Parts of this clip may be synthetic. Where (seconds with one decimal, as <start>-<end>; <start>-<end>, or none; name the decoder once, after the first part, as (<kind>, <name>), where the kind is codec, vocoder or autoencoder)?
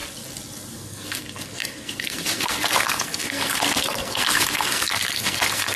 0.7-5.8 (codec, SNAC)